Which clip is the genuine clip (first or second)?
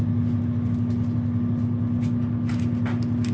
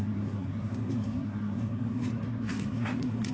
first